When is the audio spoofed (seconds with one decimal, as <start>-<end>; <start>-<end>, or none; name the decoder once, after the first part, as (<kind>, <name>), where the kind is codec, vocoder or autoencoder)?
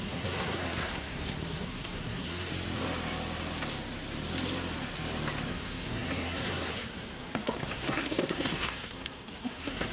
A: 0.0-2.5 (codec, SNAC); 5.5-9.9